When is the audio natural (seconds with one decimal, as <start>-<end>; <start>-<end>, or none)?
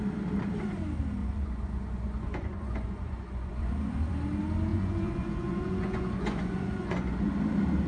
0.0-1.2; 4.1-4.7; 7.3-7.9